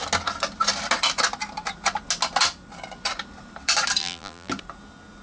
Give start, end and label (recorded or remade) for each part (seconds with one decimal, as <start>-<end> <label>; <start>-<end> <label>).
0.0-4.0 recorded; 4.0-4.5 remade; 4.5-5.2 recorded